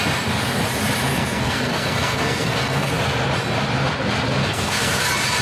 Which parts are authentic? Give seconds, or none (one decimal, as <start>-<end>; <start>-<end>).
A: 0.0-1.1; 2.9-4.4; 5.0-5.4